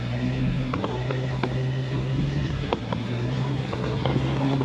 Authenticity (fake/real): fake